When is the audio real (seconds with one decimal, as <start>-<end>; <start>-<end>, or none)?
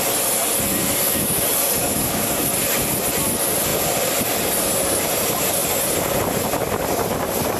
0.0-0.8; 1.4-1.8; 2.4-7.6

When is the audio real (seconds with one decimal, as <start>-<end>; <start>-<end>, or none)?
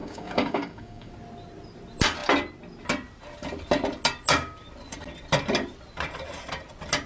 1.1-7.1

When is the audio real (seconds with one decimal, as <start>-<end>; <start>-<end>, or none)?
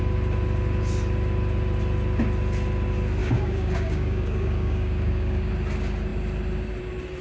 0.0-3.2; 5.5-7.2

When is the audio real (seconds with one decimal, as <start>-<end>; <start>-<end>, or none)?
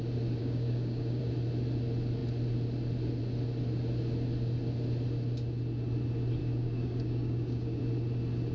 0.0-0.4; 1.2-6.4; 7.8-8.5